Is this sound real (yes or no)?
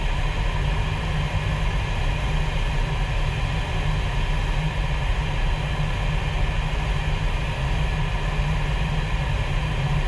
yes